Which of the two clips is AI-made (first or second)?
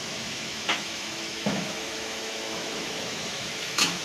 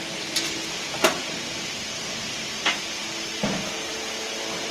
first